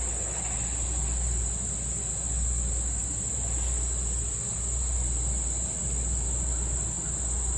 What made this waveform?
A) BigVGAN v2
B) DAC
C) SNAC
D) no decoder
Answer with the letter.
D